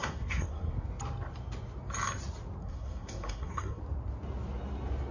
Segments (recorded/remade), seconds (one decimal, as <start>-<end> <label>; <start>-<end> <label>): 0.0-0.7 remade; 0.7-2.6 recorded; 2.6-3.8 remade; 3.8-5.1 recorded